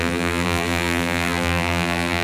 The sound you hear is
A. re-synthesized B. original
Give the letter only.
A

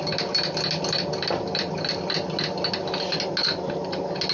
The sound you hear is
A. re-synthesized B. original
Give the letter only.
B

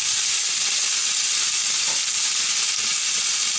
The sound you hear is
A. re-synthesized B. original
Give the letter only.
B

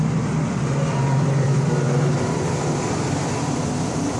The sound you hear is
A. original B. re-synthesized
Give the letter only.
B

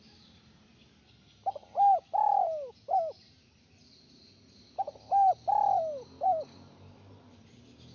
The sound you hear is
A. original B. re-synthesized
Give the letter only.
A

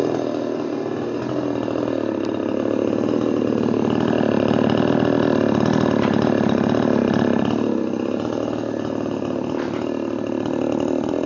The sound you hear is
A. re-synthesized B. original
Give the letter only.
B